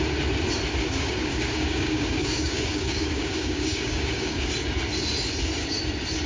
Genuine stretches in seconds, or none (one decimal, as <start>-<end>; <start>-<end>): 0.0-0.8; 4.5-6.3